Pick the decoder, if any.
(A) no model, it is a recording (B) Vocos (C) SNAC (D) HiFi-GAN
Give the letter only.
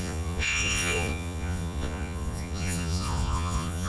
B